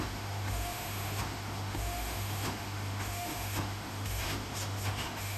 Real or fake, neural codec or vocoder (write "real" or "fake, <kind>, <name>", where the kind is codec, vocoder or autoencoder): fake, autoencoder, DAC-VAE